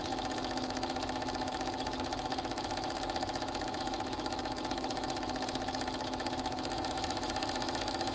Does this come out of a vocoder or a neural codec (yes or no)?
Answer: yes